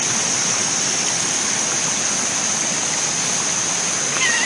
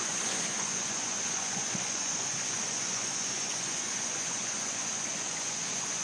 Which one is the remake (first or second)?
second